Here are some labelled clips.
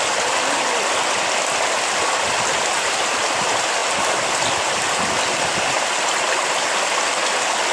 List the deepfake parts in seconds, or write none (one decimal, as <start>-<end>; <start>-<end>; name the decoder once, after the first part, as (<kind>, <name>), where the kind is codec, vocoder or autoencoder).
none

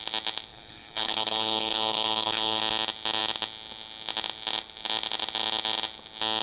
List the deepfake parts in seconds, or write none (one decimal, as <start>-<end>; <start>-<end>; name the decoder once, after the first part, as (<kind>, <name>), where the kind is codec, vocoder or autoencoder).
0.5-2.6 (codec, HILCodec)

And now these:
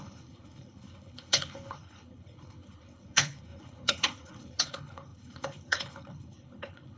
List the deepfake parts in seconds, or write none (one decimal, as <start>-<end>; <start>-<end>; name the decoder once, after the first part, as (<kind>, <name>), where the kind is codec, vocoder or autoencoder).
0.0-7.0 (codec, HILCodec)

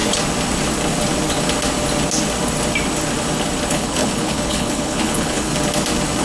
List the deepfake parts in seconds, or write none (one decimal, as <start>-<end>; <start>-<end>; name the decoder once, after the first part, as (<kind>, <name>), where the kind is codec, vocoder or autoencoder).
3.7-5.5 (codec, HILCodec)

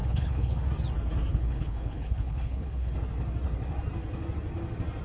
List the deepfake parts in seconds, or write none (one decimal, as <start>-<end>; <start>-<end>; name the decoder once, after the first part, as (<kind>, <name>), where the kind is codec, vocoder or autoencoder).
0.0-0.6 (codec, HILCodec); 1.3-2.9

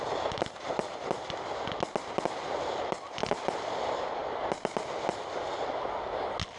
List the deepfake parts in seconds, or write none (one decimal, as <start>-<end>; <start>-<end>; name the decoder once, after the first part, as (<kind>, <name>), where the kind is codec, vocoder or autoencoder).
none

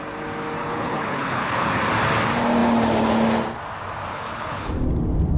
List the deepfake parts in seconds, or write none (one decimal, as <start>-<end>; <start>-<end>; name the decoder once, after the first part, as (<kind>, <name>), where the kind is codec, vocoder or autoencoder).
0.6-1.8 (codec, HILCodec); 4.1-4.7

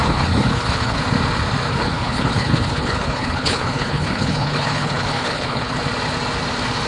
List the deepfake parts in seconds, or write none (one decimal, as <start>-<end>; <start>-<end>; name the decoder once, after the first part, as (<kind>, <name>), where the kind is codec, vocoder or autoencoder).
0.0-1.0 (codec, HILCodec); 1.7-5.8